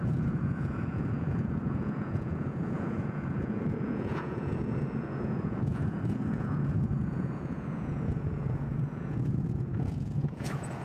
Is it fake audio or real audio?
fake